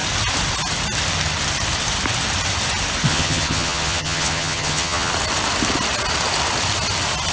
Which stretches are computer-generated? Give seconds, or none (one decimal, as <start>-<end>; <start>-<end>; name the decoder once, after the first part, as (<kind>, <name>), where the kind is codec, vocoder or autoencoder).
3.1-5.1 (vocoder, HiFi-GAN)